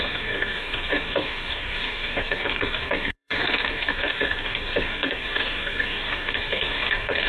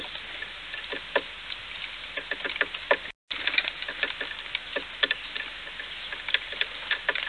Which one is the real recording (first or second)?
second